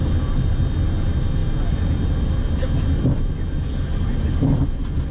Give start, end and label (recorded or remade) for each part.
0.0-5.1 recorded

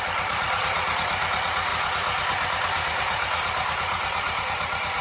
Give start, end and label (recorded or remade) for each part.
0.0-5.0 remade

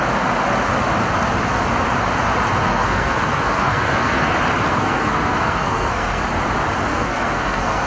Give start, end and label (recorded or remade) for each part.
0.0-2.6 recorded; 2.6-4.3 remade; 4.3-4.7 recorded; 4.7-6.2 remade; 6.2-6.9 recorded; 6.9-7.9 remade

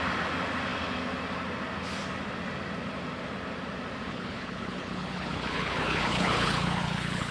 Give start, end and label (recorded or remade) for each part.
0.0-4.1 recorded; 4.1-7.3 remade

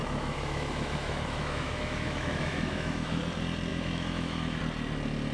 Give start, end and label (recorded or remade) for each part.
0.0-3.2 remade; 3.2-3.7 recorded; 3.7-4.6 remade; 4.6-5.3 recorded

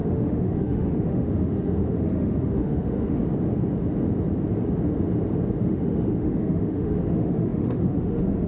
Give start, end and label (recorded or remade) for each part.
0.0-3.2 remade; 3.2-5.6 recorded; 5.6-8.5 remade

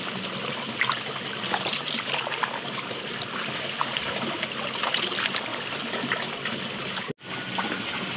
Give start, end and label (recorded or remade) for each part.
0.0-8.2 recorded